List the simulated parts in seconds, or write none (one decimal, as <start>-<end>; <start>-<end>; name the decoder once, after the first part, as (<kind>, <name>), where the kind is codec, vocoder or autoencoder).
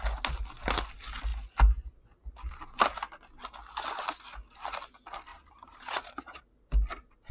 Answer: 5.3-6.4 (vocoder, Vocos)